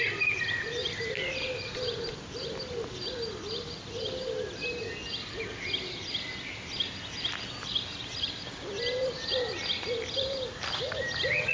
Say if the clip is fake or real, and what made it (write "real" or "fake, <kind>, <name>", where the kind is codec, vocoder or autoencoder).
real